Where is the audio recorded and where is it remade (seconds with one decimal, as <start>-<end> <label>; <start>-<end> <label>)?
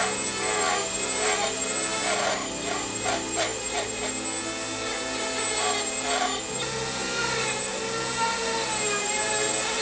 0.0-9.8 recorded